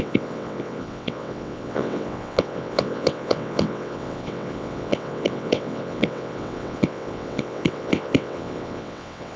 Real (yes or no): no